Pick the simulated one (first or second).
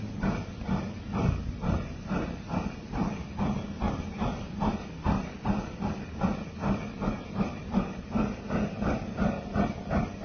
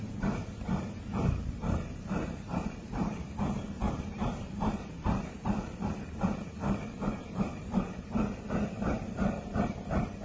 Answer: second